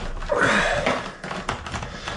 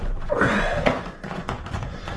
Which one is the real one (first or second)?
first